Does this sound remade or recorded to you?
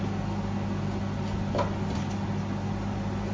recorded